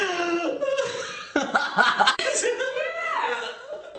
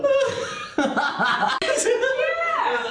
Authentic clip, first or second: second